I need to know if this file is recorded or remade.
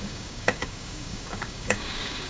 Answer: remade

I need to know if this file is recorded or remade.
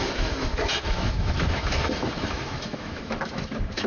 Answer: remade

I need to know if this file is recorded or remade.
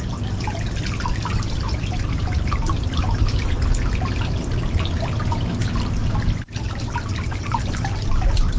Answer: recorded